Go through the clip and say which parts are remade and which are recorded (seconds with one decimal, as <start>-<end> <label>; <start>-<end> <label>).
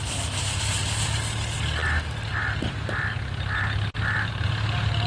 0.0-5.1 recorded